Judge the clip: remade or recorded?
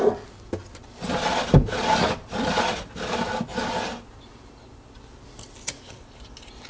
recorded